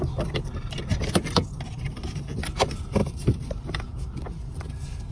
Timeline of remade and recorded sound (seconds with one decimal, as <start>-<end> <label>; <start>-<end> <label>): 0.0-5.1 recorded